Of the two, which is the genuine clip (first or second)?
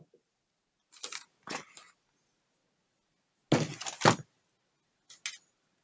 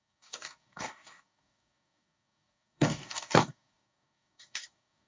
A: first